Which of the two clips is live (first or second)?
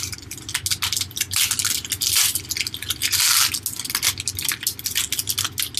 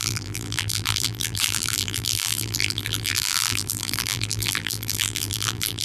first